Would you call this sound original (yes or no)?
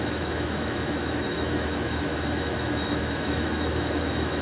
no